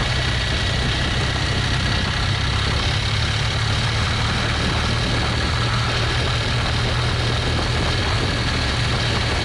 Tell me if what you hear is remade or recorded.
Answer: recorded